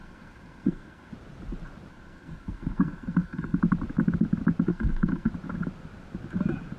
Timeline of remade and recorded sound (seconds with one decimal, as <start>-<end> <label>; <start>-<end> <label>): 0.0-1.1 remade; 1.1-1.9 recorded; 1.9-3.6 remade; 3.6-4.7 recorded; 4.7-5.3 remade; 5.3-6.8 recorded

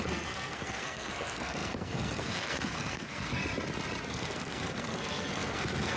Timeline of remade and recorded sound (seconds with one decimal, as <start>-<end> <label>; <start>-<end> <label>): 0.0-3.4 remade; 3.4-4.1 recorded; 4.1-6.0 remade